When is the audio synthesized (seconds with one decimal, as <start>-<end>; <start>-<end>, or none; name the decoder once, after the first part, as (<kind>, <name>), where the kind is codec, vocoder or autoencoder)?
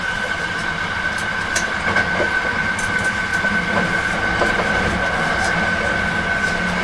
0.0-0.6 (vocoder, BigVGAN v2); 2.6-3.3; 6.1-6.8